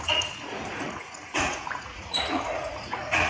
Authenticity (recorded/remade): remade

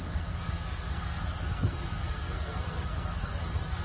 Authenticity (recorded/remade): remade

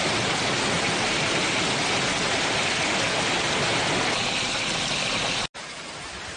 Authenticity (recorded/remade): recorded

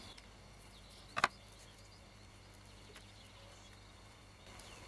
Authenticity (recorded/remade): recorded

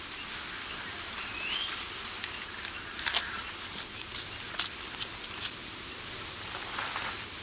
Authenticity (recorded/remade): remade